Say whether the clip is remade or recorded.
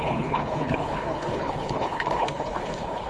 remade